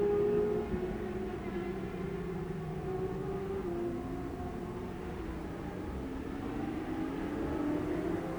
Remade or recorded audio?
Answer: recorded